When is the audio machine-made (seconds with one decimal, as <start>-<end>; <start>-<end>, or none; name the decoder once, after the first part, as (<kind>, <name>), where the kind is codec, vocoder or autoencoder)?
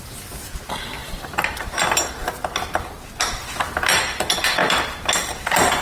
none